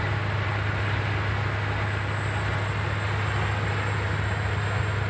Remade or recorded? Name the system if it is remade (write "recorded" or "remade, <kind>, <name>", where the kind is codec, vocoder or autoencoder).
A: recorded